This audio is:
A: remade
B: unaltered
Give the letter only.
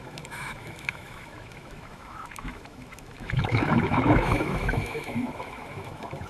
A